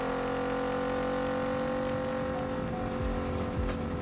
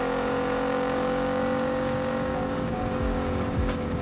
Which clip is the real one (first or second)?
first